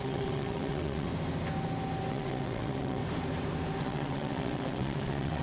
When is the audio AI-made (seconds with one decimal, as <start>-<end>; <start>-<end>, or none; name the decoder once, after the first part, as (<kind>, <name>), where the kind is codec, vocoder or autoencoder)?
0.0-1.1 (vocoder, WaveNeXt); 2.1-3.0; 3.8-5.4